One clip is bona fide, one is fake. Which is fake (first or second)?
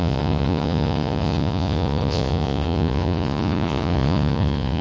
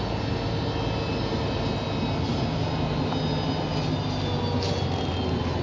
first